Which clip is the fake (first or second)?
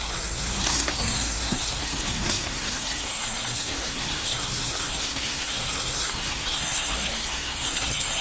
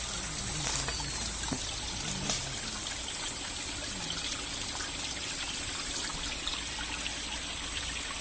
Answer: first